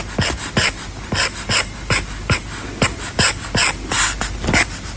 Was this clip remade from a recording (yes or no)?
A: no